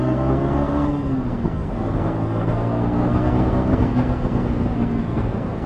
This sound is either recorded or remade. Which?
remade